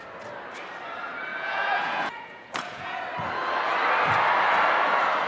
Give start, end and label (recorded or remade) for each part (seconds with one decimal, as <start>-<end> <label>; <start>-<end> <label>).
0.0-1.3 recorded; 1.3-3.0 remade; 3.0-5.3 recorded